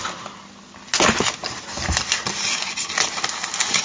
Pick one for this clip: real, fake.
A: real